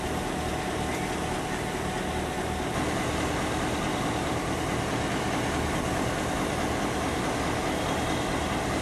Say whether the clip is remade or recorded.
recorded